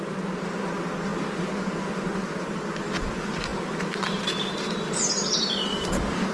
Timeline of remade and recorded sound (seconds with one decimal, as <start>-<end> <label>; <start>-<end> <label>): 0.0-5.7 recorded; 5.7-6.3 remade